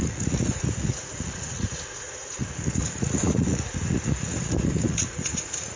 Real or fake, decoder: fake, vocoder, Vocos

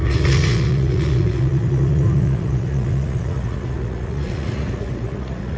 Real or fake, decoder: fake, vocoder, Vocos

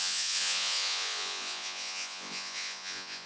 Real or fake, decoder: fake, vocoder, Vocos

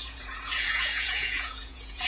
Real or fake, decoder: fake, vocoder, Vocos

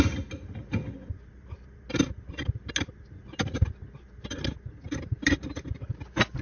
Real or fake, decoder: real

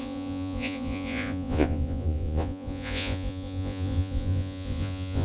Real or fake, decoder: fake, vocoder, Vocos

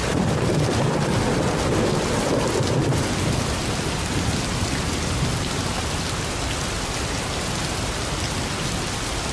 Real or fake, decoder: real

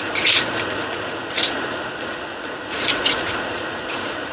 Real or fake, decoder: fake, vocoder, Vocos